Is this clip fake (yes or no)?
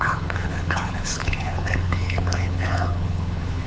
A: yes